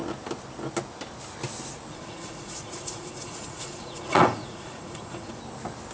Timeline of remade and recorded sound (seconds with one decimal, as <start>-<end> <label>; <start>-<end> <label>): 0.0-1.9 recorded; 1.9-5.4 remade; 5.4-5.9 recorded